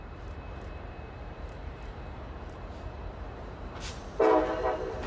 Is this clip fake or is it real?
fake